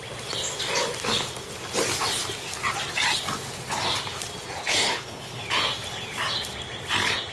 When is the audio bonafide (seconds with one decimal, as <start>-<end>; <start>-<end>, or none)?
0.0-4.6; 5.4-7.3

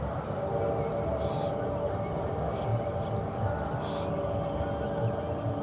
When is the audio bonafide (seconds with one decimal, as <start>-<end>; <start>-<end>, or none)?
0.0-5.6

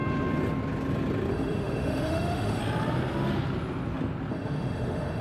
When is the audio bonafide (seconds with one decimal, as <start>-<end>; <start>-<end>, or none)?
0.0-1.3; 2.6-4.3

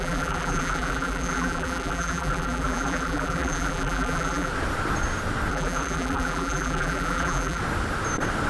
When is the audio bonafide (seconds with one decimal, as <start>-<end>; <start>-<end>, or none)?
4.5-5.5; 7.6-8.5

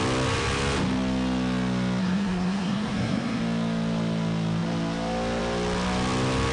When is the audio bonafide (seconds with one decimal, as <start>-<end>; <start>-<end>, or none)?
0.0-2.0; 3.4-6.5

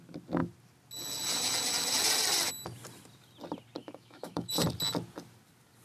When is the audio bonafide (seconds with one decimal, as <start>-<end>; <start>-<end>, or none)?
0.0-3.8; 4.5-5.8

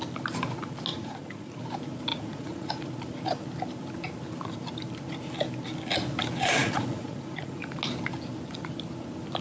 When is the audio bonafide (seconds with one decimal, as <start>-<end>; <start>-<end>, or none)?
0.0-0.9; 1.6-2.1; 2.9-6.6; 7.7-9.4